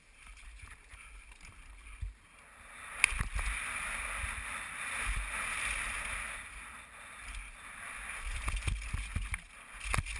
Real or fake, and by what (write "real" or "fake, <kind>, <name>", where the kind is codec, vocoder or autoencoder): real